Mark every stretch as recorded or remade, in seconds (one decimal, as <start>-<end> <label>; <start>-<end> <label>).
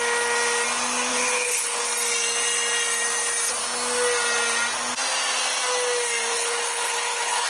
0.0-1.1 recorded; 1.1-1.8 remade; 1.8-6.3 recorded; 6.3-7.5 remade